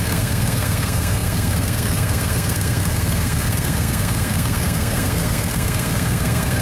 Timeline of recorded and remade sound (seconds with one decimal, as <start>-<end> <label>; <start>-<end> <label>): 0.0-6.6 remade